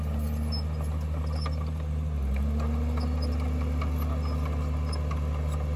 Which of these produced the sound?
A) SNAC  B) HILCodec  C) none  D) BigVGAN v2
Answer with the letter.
C